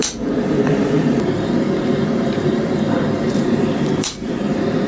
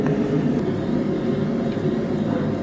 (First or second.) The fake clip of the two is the first